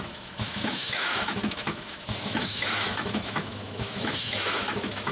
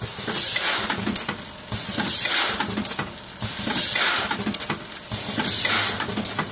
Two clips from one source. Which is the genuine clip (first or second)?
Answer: second